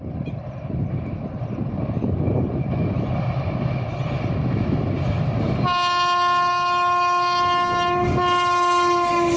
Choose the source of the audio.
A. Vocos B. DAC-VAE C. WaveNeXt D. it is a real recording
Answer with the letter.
D